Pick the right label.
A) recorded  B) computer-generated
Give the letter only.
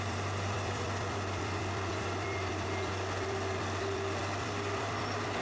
B